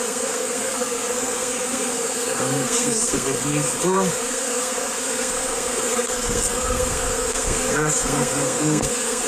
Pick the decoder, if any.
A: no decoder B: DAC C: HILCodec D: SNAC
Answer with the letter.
D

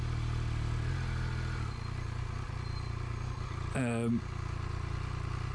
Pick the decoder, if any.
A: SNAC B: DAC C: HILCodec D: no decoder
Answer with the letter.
D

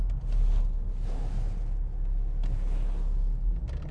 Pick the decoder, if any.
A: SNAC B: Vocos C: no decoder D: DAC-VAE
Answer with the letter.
C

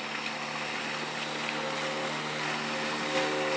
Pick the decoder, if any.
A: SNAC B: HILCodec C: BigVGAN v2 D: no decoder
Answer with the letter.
D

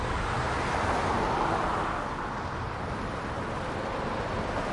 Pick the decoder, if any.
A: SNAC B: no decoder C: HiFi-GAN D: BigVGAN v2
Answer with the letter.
B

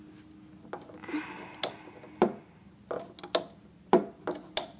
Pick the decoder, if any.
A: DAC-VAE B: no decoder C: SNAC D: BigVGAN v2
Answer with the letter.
B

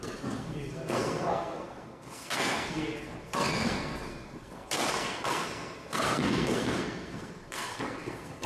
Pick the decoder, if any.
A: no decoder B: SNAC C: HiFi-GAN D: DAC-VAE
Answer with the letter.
B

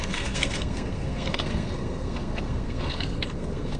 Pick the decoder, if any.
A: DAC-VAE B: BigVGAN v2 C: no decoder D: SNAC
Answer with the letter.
D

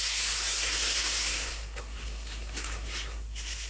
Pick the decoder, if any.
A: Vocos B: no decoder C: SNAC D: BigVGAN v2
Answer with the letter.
C